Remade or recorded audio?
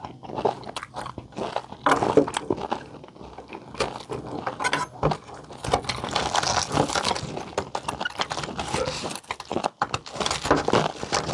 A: recorded